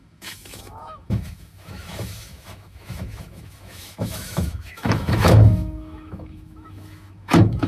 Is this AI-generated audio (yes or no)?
yes